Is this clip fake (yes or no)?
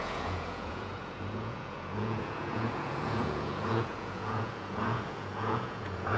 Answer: yes